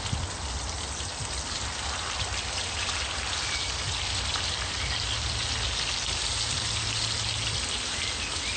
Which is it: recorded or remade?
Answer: recorded